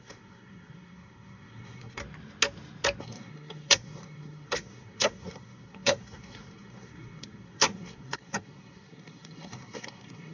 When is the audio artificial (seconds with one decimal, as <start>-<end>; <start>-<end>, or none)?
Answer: 0.0-2.0; 3.0-10.3